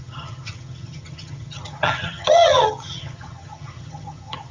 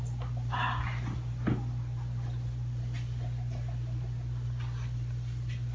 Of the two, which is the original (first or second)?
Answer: second